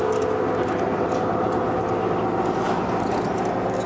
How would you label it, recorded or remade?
recorded